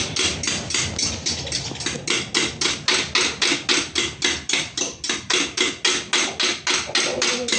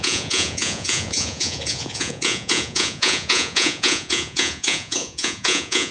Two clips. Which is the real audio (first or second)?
first